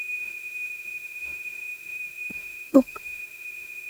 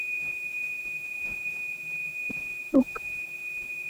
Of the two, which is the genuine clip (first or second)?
second